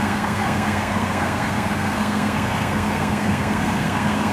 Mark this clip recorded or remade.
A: remade